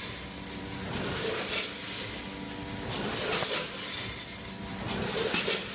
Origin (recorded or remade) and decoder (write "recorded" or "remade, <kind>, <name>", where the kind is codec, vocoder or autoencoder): recorded